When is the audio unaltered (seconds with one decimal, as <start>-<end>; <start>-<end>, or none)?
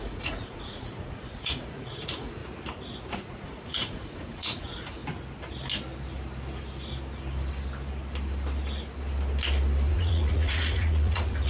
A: 2.4-3.1; 5.0-9.9